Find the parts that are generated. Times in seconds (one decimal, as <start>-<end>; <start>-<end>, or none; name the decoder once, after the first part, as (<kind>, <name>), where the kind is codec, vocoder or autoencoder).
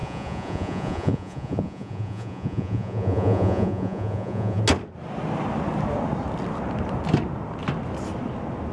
0.0-4.6 (vocoder, Vocos)